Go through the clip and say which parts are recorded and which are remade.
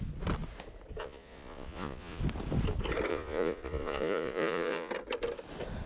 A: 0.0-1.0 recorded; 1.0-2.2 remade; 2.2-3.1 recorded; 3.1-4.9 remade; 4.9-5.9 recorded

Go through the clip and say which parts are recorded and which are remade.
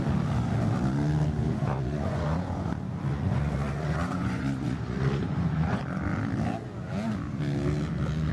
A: 0.0-1.6 recorded; 1.6-2.7 remade; 2.7-3.1 recorded; 3.1-5.8 remade; 5.8-8.3 recorded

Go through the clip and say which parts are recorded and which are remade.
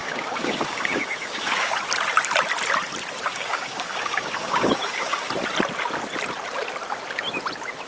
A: 0.0-1.7 remade; 1.7-3.3 recorded; 3.3-5.3 remade; 5.3-7.9 recorded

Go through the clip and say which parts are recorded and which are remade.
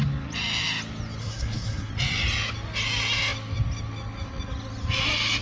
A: 0.0-1.2 recorded; 1.2-1.9 remade; 1.9-5.4 recorded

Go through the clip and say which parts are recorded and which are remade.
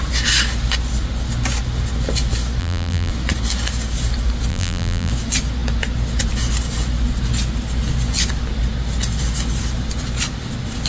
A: 0.0-2.6 recorded; 2.6-3.1 remade; 3.1-4.5 recorded; 4.5-5.1 remade; 5.1-10.9 recorded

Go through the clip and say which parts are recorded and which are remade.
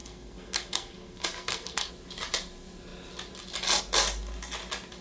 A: 0.0-1.9 remade; 1.9-5.0 recorded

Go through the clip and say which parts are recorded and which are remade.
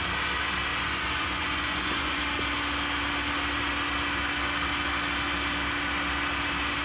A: 0.0-0.7 recorded; 0.7-2.2 remade; 2.2-6.8 recorded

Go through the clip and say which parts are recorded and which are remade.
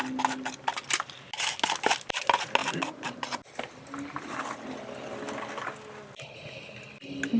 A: 0.0-7.4 recorded